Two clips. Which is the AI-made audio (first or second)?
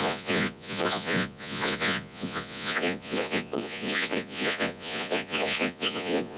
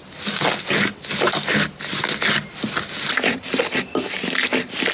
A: first